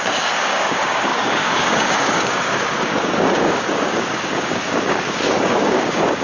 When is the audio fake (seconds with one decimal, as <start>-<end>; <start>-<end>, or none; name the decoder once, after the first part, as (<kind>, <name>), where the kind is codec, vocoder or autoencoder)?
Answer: 0.0-6.2 (codec, DAC)